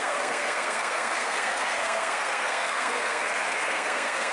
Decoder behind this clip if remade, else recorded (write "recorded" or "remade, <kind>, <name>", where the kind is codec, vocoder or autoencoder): remade, codec, SNAC